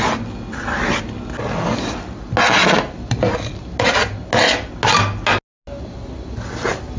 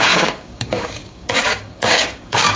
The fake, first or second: second